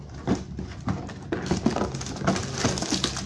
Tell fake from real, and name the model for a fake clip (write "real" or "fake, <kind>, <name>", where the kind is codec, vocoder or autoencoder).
real